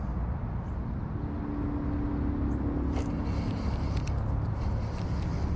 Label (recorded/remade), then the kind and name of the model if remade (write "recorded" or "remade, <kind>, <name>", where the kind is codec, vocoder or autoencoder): recorded